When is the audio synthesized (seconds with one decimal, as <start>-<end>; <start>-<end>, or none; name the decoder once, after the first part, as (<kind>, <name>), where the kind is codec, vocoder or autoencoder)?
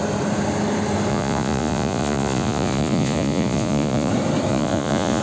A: 1.1-4.1 (vocoder, Vocos); 4.5-5.2